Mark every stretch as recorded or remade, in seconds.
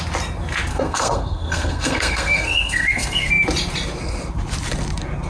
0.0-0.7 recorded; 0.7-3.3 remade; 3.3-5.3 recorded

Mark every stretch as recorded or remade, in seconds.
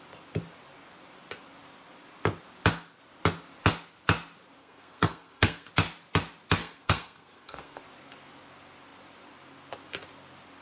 0.0-4.6 recorded; 4.6-5.7 remade; 5.7-6.6 recorded; 6.6-7.8 remade; 7.8-10.6 recorded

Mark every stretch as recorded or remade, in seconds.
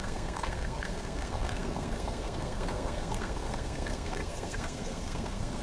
0.0-5.6 remade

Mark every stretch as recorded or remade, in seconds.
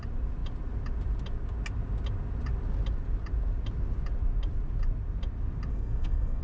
0.0-5.7 recorded; 5.7-6.4 remade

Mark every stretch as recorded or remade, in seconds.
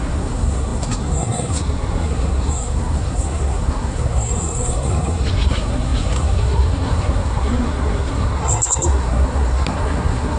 0.0-10.4 remade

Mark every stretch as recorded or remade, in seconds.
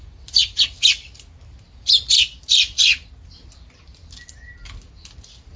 0.0-5.6 recorded